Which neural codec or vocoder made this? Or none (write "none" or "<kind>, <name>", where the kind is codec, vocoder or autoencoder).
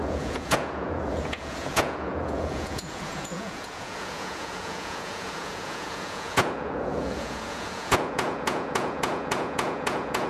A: vocoder, Vocos